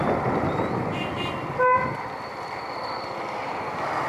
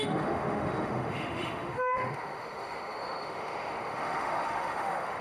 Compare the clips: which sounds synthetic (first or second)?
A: second